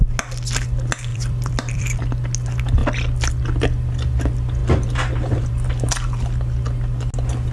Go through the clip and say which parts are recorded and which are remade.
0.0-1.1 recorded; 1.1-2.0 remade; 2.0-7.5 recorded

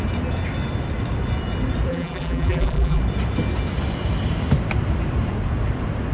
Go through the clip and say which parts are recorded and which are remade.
0.0-1.9 recorded; 1.9-3.0 remade; 3.0-6.1 recorded